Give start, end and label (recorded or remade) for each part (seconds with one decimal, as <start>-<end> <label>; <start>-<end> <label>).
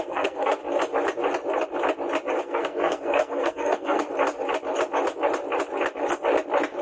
0.0-0.6 remade; 0.6-2.4 recorded; 2.4-4.1 remade; 4.1-6.8 recorded